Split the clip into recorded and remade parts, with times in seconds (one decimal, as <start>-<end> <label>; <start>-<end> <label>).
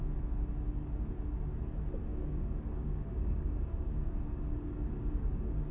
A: 0.0-2.1 recorded; 2.1-5.7 remade